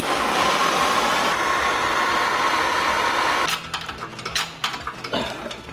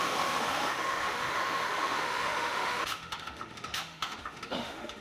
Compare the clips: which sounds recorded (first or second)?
first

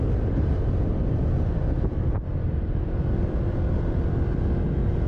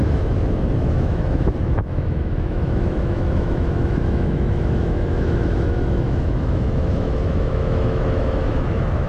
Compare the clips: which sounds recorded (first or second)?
first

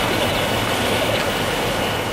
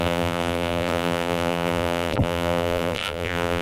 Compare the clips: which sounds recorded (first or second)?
first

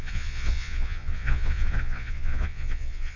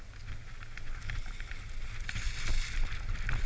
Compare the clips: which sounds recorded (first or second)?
second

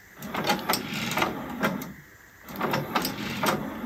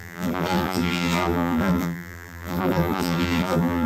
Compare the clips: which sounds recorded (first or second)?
first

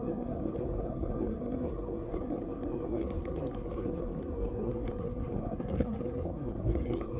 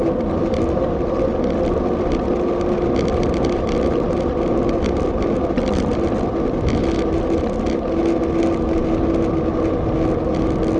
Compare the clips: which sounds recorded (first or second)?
second